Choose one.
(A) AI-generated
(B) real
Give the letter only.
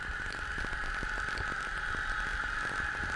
B